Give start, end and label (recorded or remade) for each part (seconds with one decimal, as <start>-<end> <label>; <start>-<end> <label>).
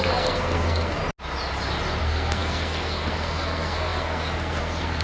0.0-1.0 remade; 1.0-2.0 recorded; 2.0-5.0 remade